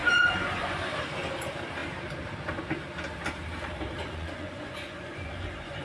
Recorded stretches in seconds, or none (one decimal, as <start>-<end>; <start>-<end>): 0.9-4.0